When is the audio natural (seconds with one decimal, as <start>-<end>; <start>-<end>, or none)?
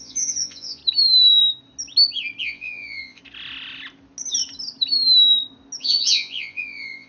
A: 0.8-2.4; 3.2-5.8